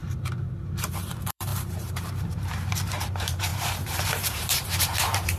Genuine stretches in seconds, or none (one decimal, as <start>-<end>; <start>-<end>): 0.0-0.9